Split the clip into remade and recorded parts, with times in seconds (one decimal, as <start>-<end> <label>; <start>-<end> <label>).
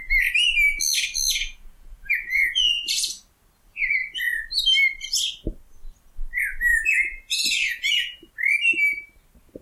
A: 0.0-1.3 recorded; 1.3-3.2 remade; 3.2-6.7 recorded; 6.7-8.3 remade; 8.3-9.6 recorded